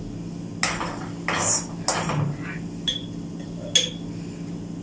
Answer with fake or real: real